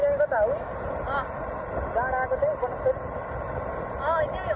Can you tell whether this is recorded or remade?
recorded